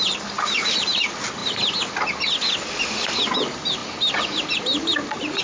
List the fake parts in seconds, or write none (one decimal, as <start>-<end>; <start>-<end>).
none